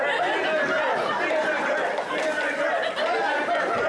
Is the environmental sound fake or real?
real